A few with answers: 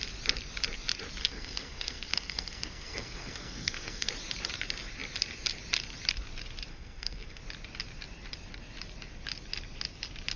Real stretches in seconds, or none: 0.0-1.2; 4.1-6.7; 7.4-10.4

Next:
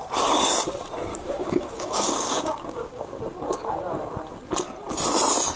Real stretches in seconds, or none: 0.0-1.1; 3.2-5.6